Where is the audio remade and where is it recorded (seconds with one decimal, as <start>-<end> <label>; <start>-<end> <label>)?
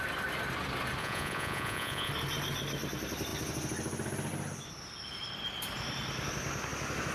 0.0-1.0 recorded; 1.0-2.1 remade; 2.1-7.1 recorded